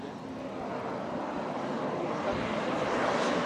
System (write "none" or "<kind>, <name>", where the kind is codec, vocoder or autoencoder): none